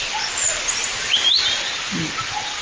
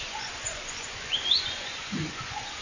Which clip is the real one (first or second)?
first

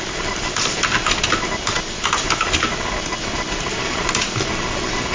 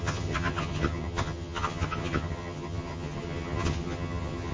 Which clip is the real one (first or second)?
first